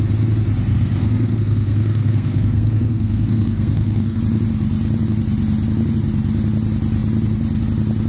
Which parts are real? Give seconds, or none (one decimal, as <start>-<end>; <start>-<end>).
0.0-0.7; 4.2-8.1